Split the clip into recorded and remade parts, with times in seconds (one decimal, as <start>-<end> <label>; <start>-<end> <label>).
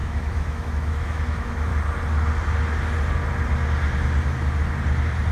0.0-1.7 remade; 1.7-5.3 recorded